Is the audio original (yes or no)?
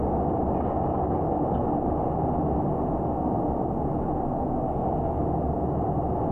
yes